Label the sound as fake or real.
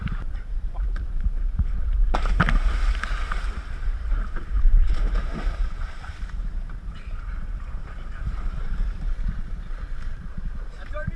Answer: fake